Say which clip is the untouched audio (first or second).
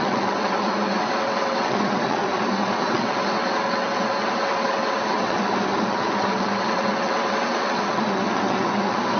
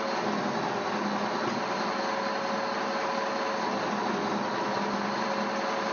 second